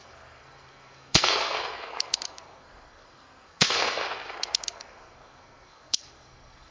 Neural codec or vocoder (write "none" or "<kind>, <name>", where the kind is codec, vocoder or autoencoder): codec, SNAC